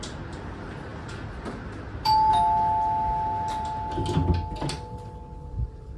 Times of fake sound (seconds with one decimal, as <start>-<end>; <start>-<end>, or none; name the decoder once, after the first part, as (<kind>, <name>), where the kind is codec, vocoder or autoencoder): none